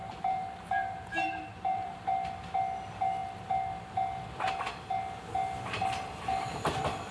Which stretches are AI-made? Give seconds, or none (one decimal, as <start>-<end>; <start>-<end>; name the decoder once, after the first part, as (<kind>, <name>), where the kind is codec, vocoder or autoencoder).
0.0-2.0 (vocoder, BigVGAN v2)

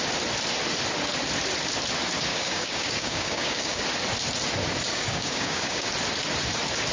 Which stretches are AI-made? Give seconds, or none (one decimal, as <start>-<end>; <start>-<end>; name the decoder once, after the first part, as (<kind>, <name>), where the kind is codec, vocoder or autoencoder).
2.3-3.8 (codec, DAC); 4.9-5.9

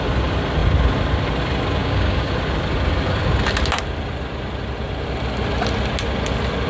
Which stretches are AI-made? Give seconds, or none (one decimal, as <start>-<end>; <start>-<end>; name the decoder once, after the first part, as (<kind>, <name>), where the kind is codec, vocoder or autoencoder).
1.8-2.3 (codec, DAC)

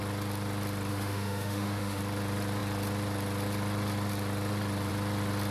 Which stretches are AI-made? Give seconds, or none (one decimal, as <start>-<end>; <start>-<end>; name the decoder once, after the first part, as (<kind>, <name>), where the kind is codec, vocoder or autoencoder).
0.9-2.0 (autoencoder, DAC-VAE)

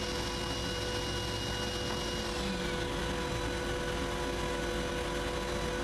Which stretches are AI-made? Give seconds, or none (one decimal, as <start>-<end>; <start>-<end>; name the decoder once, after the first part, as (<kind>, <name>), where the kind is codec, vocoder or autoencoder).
none

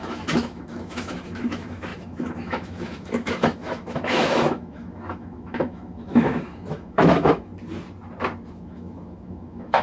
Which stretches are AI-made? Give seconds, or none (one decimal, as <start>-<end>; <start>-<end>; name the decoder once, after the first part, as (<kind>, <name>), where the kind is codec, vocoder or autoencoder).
0.0-7.5 (autoencoder, DAC-VAE); 8.5-9.8

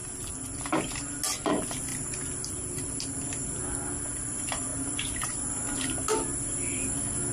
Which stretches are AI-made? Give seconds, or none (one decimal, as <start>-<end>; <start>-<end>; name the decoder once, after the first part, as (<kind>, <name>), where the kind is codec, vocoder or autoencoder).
0.0-0.6 (vocoder, BigVGAN v2); 1.9-3.6; 4.7-5.5